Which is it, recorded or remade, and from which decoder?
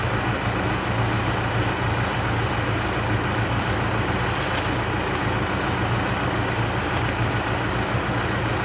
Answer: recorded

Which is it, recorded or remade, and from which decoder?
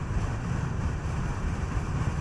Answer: remade, vocoder, BigVGAN v2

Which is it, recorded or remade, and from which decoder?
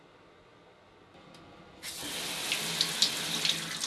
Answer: recorded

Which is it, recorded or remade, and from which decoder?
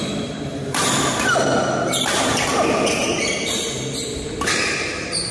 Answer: remade, vocoder, BigVGAN v2